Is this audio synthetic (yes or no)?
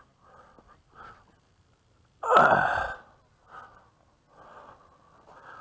no